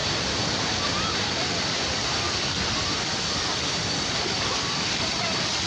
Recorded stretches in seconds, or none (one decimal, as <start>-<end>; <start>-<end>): 0.0-5.7